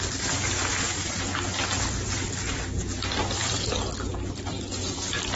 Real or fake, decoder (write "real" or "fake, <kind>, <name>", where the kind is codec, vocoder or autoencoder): real